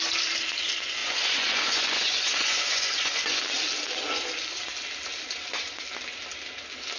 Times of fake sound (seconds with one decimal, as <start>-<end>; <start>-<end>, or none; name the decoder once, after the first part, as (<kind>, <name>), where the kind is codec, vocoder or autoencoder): 1.0-3.4 (vocoder, Vocos)